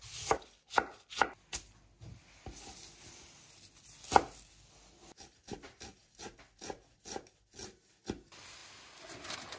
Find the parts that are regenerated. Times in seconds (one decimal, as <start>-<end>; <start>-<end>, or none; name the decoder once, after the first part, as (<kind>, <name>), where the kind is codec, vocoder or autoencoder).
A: none